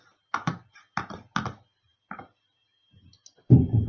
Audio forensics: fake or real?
real